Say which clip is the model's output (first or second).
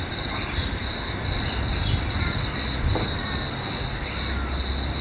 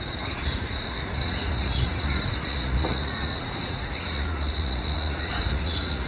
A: second